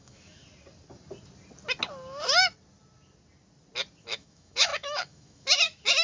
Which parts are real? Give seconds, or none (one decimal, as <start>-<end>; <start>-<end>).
0.4-4.0